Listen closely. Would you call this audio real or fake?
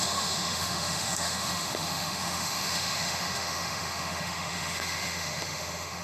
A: fake